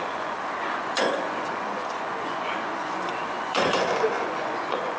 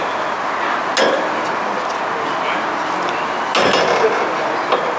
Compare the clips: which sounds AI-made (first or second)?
first